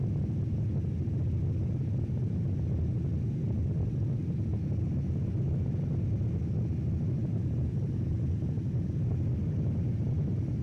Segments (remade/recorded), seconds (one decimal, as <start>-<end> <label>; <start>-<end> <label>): 0.0-7.3 recorded; 7.3-10.6 remade